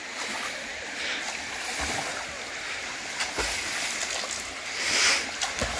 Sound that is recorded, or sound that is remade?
recorded